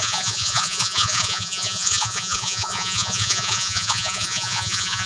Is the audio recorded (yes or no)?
no